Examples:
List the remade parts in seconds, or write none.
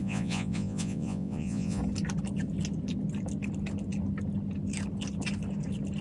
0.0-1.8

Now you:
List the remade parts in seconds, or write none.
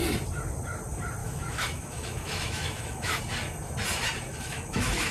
1.2-3.2; 4.3-5.1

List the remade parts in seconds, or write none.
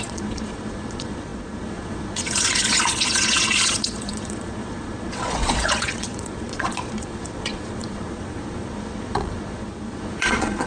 0.0-10.7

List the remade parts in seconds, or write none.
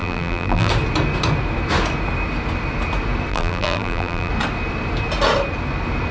0.0-0.7; 3.3-4.3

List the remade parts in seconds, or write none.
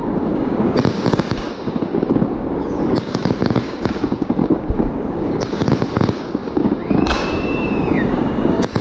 0.0-8.8